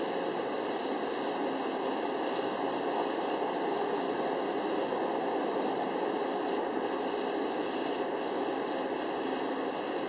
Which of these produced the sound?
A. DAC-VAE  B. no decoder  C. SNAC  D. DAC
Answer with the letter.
B